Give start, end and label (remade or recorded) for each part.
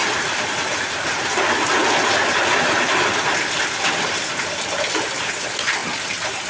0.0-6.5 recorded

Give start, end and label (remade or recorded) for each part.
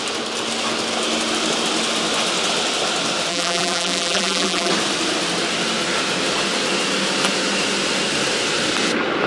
0.0-3.3 recorded; 3.3-4.7 remade; 4.7-9.3 recorded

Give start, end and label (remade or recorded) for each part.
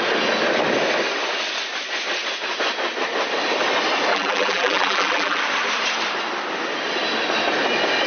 0.0-4.1 recorded; 4.1-5.4 remade; 5.4-8.1 recorded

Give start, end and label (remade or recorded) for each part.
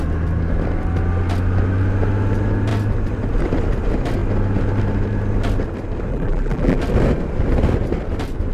0.0-6.1 recorded; 6.1-6.8 remade; 6.8-8.5 recorded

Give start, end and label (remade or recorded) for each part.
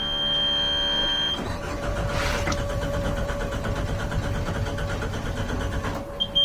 0.0-1.0 recorded; 1.0-4.5 remade; 4.5-6.4 recorded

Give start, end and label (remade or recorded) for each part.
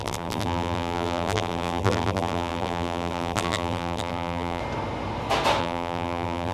0.0-4.6 remade; 4.6-5.6 recorded; 5.6-6.5 remade